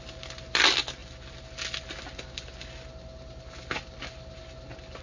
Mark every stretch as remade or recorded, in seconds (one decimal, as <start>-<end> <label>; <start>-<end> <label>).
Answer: 0.0-5.0 recorded